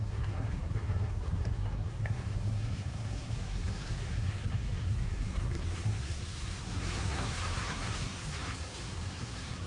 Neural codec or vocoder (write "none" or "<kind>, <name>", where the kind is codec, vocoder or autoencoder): codec, SNAC